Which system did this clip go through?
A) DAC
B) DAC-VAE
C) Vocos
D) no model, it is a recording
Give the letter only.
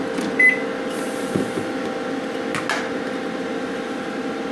D